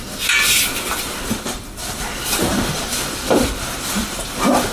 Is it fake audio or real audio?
fake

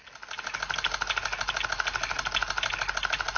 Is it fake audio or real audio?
real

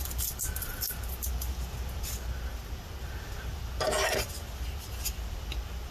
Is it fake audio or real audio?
real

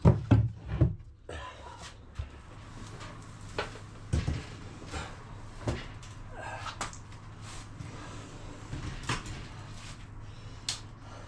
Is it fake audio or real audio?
real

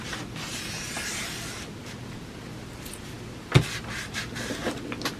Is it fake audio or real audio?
real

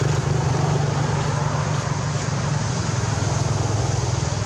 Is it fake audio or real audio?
real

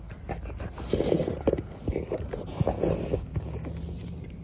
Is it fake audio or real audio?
real